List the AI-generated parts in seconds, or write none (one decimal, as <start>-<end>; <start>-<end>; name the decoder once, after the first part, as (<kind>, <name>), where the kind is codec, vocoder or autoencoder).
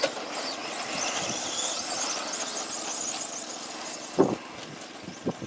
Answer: none